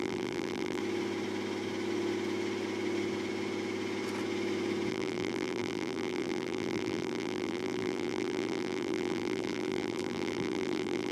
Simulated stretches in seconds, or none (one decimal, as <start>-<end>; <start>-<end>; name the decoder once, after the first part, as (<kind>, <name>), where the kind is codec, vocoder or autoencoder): 0.0-0.8 (vocoder, BigVGAN v2); 4.9-11.1